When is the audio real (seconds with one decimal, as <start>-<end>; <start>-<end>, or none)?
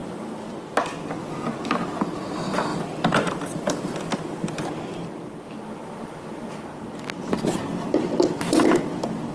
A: 0.5-2.7; 4.5-9.3